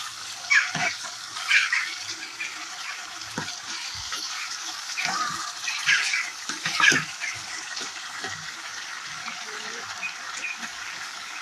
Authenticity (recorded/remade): remade